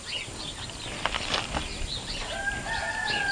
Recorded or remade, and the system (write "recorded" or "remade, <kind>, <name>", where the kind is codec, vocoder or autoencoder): recorded